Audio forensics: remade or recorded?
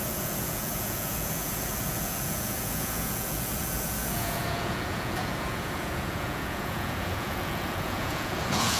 remade